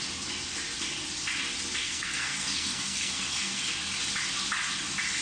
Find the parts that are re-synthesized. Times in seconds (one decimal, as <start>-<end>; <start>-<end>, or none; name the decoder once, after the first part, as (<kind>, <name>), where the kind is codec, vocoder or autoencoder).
1.8-3.7 (codec, SNAC)